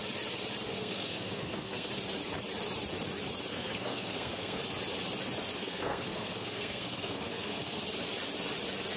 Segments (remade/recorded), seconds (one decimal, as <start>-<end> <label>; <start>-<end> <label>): 0.0-0.7 recorded; 0.7-1.9 remade; 1.9-3.5 recorded; 3.5-4.6 remade; 4.6-5.6 recorded; 5.6-7.8 remade; 7.8-9.0 recorded